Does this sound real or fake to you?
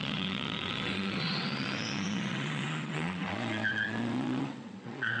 fake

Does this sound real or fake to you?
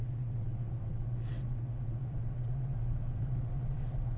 fake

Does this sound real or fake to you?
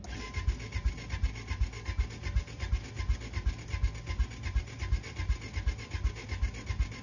real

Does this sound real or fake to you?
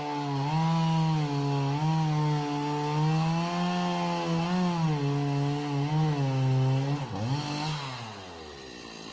real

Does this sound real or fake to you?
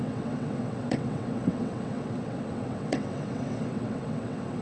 fake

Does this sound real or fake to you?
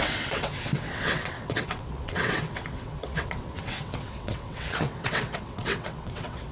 fake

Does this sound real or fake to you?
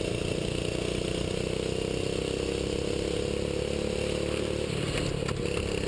real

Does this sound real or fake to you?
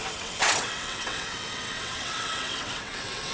fake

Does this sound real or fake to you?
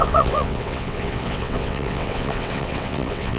fake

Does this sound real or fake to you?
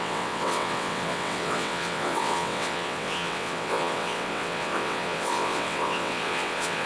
fake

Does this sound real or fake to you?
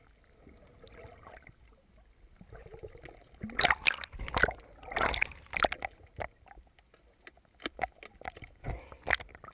real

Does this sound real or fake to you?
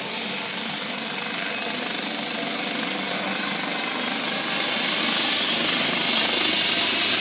real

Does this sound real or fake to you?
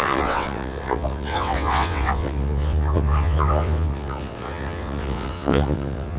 fake